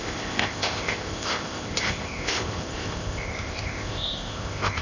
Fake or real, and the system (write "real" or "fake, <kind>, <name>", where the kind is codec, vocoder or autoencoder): fake, codec, ZipCodec